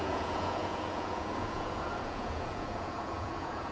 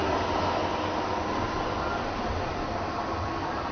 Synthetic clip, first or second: first